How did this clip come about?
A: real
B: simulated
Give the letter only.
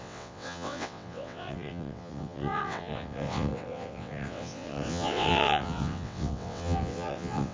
B